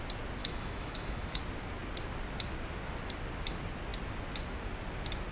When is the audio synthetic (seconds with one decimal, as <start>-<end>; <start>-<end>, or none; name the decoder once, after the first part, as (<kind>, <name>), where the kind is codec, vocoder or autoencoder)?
0.4-1.4 (autoencoder, DAC-VAE)